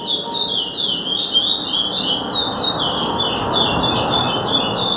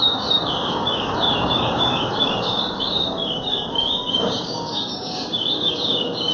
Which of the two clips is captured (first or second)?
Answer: first